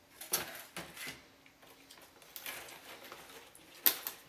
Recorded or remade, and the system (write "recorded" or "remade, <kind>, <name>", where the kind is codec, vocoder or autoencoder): recorded